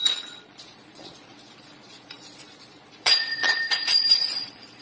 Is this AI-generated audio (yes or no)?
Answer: yes